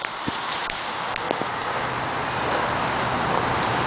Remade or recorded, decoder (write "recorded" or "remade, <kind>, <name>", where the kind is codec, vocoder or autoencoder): recorded